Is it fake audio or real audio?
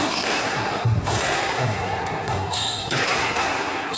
fake